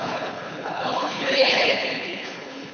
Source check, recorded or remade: remade